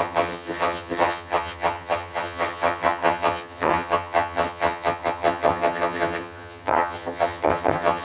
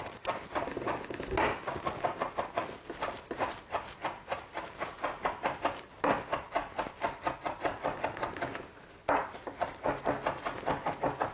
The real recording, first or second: second